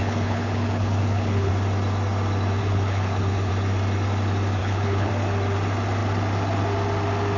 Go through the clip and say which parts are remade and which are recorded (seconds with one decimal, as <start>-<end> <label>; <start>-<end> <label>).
0.0-1.5 remade; 1.5-2.6 recorded; 2.6-3.5 remade; 3.5-4.6 recorded; 4.6-5.1 remade; 5.1-7.4 recorded